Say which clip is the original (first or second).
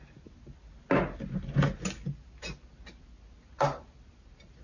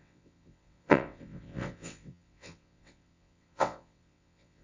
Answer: first